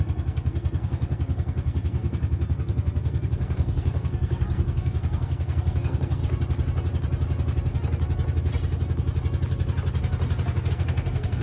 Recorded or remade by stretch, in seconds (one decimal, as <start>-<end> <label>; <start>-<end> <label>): 0.0-6.2 remade; 6.2-10.7 recorded; 10.7-11.4 remade